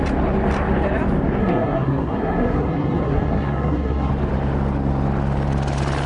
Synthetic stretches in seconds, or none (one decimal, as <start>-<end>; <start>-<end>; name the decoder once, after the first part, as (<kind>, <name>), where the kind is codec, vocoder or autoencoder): 1.4-4.1 (codec, SNAC)